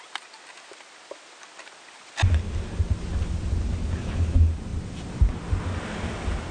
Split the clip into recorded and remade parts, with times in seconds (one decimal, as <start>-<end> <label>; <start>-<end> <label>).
0.0-6.5 recorded